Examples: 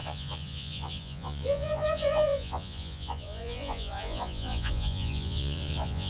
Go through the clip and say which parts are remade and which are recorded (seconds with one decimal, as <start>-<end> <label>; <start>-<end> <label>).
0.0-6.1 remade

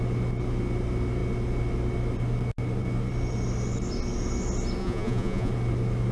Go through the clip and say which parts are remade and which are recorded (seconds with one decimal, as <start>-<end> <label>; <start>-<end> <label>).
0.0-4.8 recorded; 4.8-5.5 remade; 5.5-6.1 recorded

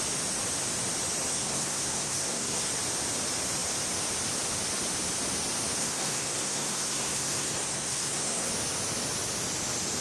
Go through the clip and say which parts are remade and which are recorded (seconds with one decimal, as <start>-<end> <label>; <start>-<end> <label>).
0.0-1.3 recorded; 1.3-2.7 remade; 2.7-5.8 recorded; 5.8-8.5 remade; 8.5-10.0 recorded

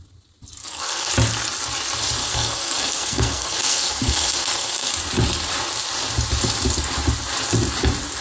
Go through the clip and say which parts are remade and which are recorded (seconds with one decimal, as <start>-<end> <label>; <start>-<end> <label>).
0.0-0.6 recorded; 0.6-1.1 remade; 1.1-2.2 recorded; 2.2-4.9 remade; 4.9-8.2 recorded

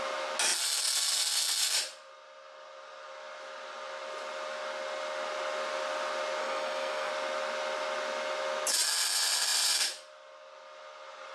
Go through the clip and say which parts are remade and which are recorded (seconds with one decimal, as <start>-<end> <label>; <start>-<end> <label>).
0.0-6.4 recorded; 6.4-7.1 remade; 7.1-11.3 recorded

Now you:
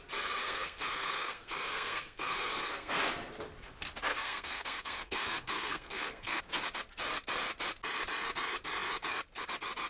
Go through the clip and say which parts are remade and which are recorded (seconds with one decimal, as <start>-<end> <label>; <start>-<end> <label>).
0.0-0.4 recorded; 0.4-3.0 remade; 3.0-4.1 recorded; 4.1-6.4 remade; 6.4-9.9 recorded